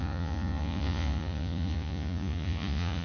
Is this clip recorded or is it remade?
remade